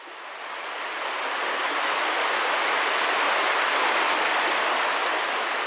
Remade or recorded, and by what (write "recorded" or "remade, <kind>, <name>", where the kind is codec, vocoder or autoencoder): recorded